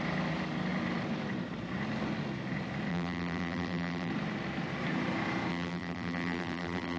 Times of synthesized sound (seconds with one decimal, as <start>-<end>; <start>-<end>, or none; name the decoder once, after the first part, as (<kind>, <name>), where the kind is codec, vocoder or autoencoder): 2.9-4.1 (vocoder, BigVGAN v2); 5.5-7.0